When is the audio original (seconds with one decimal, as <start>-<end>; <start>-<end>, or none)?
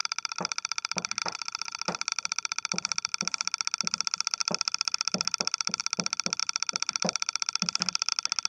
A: 1.2-2.1; 3.1-4.4; 5.8-6.4; 8.1-8.5